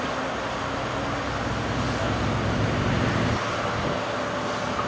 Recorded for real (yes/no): yes